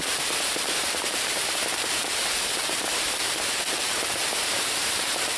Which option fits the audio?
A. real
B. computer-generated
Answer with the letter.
B